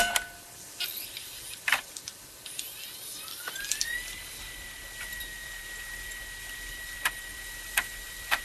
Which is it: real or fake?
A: fake